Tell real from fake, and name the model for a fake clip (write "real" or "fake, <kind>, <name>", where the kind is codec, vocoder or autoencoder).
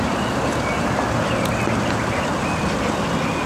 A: real